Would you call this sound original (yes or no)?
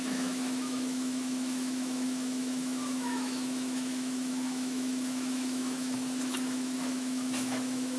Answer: no